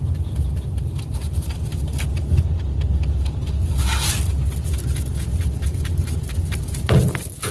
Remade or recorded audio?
recorded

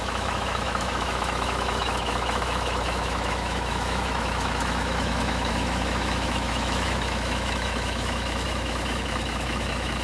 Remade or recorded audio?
remade